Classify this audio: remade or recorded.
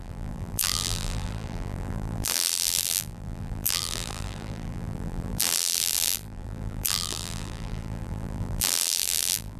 remade